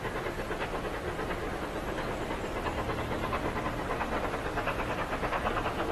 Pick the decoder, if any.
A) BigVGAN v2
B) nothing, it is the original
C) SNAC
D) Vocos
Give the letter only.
B